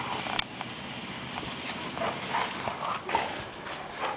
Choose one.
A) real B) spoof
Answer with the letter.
A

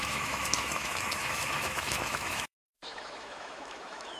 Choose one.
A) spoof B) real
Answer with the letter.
A